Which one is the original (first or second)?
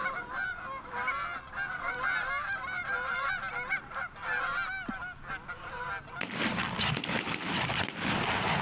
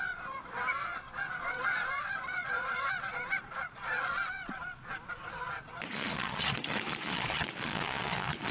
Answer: first